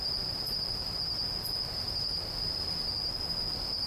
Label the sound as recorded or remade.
recorded